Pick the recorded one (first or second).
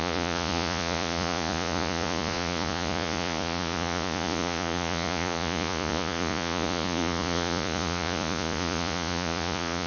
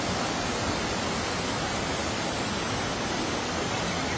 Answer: second